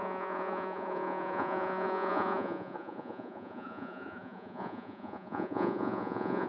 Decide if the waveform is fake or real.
fake